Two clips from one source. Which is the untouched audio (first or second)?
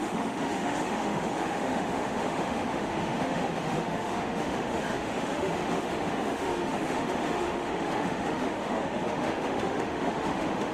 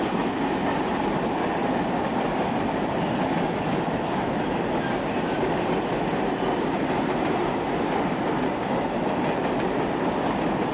second